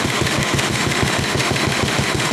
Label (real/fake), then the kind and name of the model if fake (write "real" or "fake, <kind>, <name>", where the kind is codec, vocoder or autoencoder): fake, autoencoder, DAC-VAE